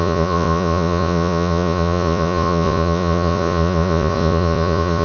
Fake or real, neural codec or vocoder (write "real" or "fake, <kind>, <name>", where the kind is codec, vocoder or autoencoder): fake, vocoder, Vocos